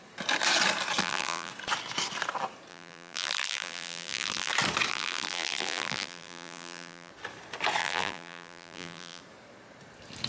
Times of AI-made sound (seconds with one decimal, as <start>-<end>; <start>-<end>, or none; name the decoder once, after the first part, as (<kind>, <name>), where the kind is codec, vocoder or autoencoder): 1.0-1.5 (vocoder, BigVGAN v2); 2.7-4.5; 4.9-7.1; 7.8-9.2